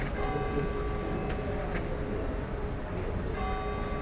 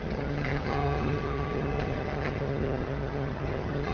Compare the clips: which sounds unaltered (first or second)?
first